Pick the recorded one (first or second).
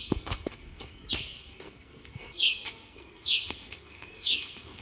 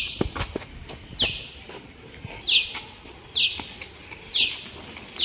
second